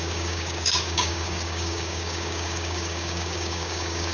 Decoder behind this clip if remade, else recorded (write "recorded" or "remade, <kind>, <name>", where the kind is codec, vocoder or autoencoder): remade, codec, DAC